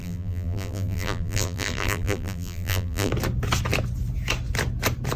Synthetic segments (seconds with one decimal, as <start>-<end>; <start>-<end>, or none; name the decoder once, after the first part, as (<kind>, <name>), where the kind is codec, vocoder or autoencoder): 0.0-3.1 (vocoder, BigVGAN v2)